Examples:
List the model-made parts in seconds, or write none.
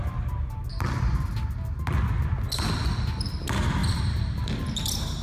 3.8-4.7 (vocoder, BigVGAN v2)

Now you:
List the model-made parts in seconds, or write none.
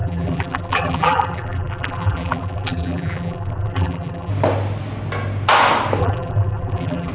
0.0-4.3 (vocoder, BigVGAN v2); 6.0-7.1